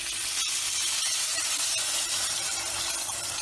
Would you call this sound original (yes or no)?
yes